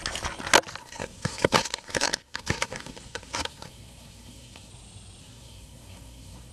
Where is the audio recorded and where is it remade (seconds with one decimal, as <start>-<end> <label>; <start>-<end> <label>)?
0.0-0.8 recorded; 0.8-4.7 remade; 4.7-5.2 recorded; 5.2-6.5 remade